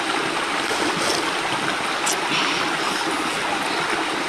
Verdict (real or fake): real